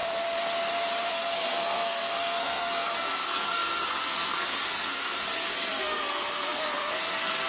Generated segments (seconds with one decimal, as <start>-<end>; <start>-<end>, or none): 1.1-7.5